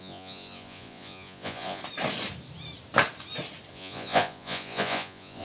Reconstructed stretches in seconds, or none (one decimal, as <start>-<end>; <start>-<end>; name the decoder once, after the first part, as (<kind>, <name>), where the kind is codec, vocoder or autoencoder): 0.0-1.8 (vocoder, Vocos); 3.7-5.4